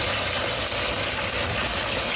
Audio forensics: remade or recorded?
recorded